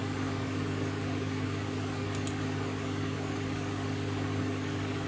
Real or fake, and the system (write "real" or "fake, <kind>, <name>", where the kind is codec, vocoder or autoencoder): fake, codec, DAC